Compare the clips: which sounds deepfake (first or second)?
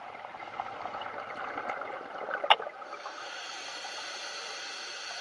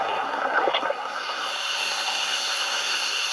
second